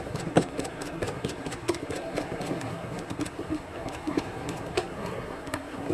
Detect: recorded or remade remade